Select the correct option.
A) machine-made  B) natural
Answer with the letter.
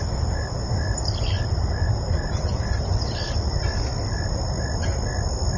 B